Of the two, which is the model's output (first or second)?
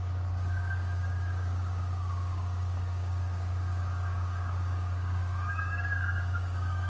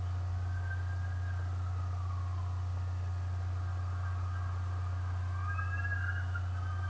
first